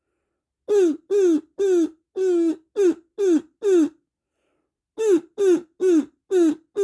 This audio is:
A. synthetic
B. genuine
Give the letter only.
B